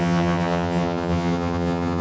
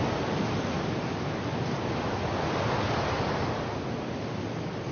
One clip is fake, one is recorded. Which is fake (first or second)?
first